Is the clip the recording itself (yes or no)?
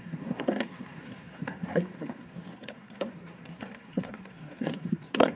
no